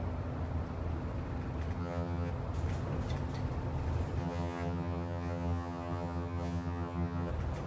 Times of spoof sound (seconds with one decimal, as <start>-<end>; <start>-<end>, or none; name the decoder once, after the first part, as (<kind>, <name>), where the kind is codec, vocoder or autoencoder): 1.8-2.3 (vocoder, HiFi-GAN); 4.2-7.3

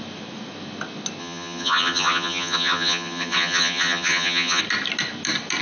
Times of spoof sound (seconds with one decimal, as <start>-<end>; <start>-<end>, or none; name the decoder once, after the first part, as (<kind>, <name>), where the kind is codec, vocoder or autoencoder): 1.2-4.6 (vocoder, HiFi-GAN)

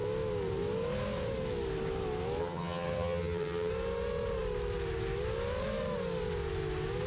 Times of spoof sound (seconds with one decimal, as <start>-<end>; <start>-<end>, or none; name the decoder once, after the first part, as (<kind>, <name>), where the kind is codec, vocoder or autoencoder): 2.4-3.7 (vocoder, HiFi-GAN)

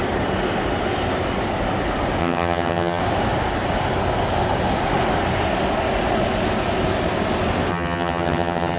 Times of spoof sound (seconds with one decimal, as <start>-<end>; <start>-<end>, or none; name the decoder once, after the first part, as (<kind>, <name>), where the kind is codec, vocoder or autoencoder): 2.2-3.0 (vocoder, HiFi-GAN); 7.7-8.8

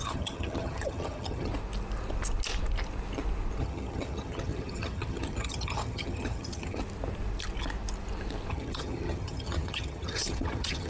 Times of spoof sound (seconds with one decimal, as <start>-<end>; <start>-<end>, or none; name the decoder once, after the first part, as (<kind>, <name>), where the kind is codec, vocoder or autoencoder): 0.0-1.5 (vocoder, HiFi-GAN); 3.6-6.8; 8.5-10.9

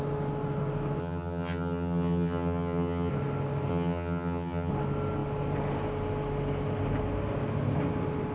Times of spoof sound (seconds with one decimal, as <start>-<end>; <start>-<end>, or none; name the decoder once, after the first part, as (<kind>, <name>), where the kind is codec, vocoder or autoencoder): 1.0-3.1 (vocoder, HiFi-GAN); 3.7-4.7

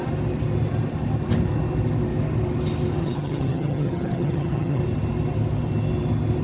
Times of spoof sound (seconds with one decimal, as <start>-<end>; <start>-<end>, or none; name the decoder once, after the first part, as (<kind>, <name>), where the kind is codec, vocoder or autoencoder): 3.0-4.8 (vocoder, HiFi-GAN)

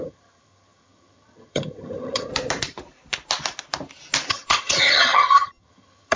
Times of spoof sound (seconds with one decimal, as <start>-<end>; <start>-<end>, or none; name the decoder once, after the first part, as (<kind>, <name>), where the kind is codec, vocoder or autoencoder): 0.0-2.3 (vocoder, HiFi-GAN); 4.3-6.2